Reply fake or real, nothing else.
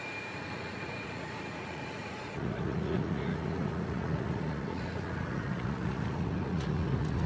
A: fake